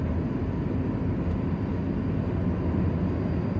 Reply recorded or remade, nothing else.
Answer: recorded